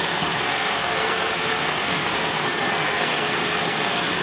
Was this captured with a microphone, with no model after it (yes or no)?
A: no